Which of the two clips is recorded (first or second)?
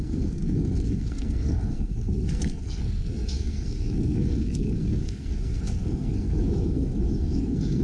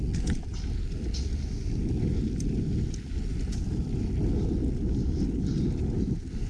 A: second